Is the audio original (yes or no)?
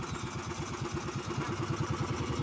yes